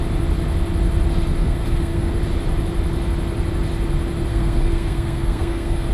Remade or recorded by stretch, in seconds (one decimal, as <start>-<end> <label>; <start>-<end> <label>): 0.0-1.4 recorded; 1.4-2.1 remade; 2.1-4.3 recorded; 4.3-5.9 remade